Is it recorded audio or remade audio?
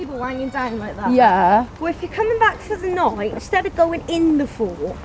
recorded